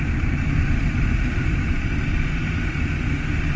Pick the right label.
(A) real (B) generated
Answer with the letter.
A